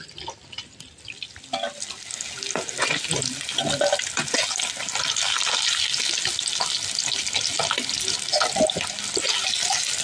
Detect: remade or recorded recorded